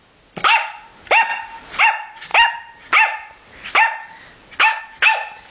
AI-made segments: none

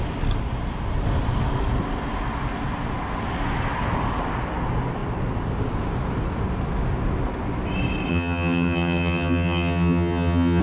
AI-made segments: 8.1-10.6 (vocoder, HiFi-GAN)

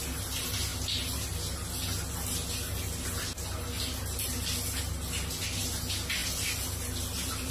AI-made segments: none

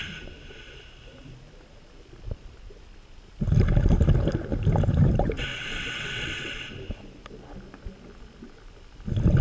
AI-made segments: 5.5-6.7 (vocoder, WaveNeXt)

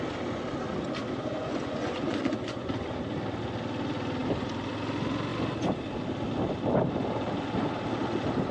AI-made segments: 1.4-2.7 (vocoder, Vocos)

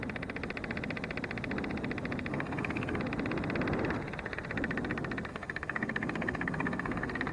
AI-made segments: 2.3-3.0 (codec, SNAC); 5.3-7.3